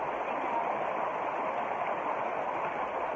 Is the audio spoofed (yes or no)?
no